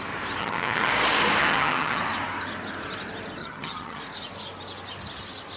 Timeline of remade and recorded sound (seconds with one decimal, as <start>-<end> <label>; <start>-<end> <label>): 0.0-0.4 recorded; 0.4-0.9 remade; 0.9-1.4 recorded; 1.4-2.0 remade; 2.0-3.4 recorded; 3.4-4.0 remade; 4.0-5.6 recorded